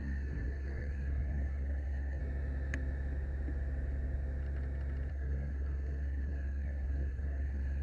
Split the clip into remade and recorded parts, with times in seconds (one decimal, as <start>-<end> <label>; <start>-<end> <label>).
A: 0.0-2.2 remade; 2.2-5.1 recorded; 5.1-7.8 remade